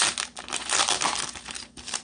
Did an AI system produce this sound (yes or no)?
no